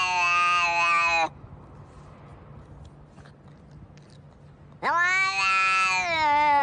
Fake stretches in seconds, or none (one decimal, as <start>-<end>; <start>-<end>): none

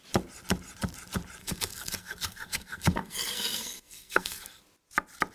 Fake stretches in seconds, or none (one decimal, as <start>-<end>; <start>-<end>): 1.4-4.6

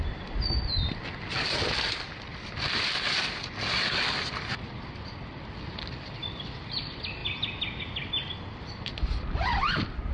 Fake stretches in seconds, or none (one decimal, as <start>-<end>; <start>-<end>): none

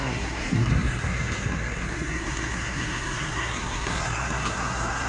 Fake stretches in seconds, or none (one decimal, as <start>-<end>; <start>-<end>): 0.0-5.1